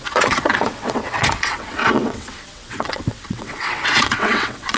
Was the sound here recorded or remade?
remade